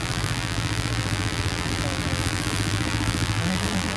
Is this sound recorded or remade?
remade